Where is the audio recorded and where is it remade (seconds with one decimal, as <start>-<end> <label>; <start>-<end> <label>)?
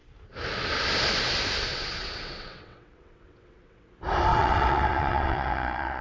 0.0-1.7 recorded; 1.7-3.9 remade; 3.9-4.3 recorded; 4.3-6.0 remade